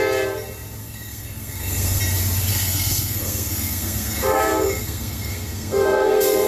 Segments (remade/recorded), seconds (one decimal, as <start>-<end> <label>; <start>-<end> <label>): 0.0-0.8 recorded; 0.8-2.0 remade; 2.0-2.5 recorded; 2.5-6.5 remade